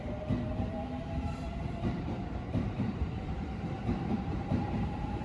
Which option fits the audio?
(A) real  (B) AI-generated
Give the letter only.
B